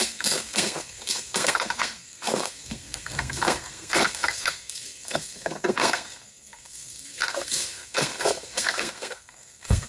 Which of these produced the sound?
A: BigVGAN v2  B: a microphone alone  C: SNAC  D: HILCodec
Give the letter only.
C